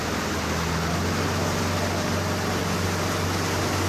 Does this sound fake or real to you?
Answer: real